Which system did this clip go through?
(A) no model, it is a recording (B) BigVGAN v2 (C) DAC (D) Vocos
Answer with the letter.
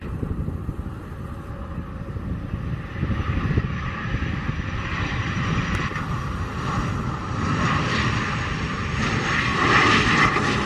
B